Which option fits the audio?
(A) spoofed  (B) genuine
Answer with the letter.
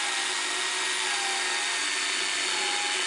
B